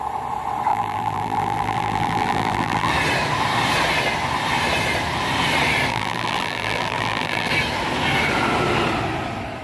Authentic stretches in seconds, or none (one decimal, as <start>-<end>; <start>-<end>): 0.0-0.7; 2.9-5.9; 7.5-9.6